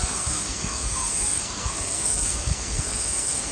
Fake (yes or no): yes